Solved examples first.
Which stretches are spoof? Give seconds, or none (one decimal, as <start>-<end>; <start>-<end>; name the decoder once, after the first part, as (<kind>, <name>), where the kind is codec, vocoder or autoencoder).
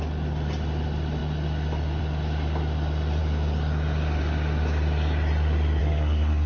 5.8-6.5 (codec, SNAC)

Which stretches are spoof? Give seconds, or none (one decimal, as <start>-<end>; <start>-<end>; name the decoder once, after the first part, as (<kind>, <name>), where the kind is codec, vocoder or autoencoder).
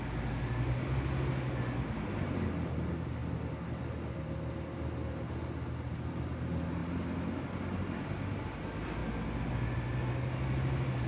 none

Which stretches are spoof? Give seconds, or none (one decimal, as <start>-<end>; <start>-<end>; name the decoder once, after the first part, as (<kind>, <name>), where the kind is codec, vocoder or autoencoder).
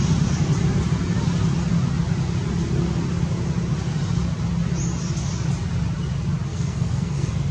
6.5-7.5 (codec, SNAC)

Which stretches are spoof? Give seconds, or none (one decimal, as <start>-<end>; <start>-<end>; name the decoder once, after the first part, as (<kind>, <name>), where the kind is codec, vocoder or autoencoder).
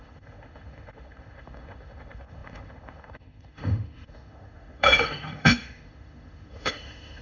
0.0-7.2 (autoencoder, DAC-VAE)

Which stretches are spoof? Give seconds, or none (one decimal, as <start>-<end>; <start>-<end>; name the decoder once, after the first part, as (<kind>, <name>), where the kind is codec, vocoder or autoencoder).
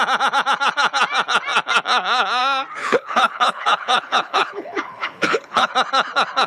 2.8-5.7 (codec, HILCodec)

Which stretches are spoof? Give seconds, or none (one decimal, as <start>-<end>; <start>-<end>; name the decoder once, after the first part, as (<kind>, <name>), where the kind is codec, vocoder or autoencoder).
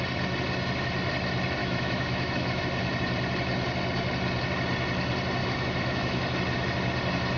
1.6-2.6 (autoencoder, DAC-VAE); 5.4-6.2